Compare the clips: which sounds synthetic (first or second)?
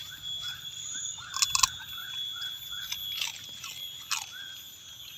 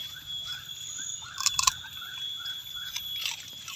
second